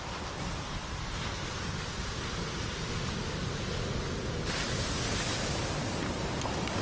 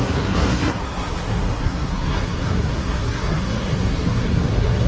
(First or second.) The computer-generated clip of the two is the second